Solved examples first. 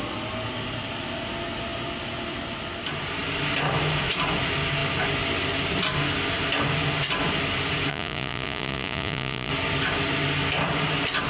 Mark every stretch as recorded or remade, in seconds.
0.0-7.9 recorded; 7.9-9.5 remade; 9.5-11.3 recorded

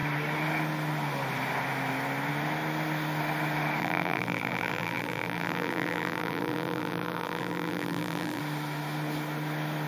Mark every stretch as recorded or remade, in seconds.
0.0-3.8 recorded; 3.8-8.4 remade; 8.4-9.9 recorded